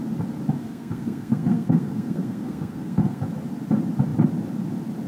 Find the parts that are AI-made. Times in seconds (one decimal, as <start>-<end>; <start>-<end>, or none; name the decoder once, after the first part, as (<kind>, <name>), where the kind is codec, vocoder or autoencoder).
0.6-3.2 (codec, SNAC)

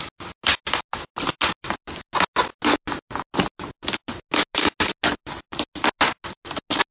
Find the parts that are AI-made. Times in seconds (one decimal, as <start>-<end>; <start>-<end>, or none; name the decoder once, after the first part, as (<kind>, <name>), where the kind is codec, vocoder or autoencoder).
none